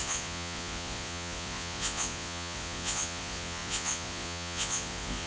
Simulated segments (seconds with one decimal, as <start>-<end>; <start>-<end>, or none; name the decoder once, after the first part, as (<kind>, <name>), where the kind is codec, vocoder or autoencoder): 0.0-5.3 (vocoder, Vocos)